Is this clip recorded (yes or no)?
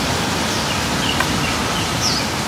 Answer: yes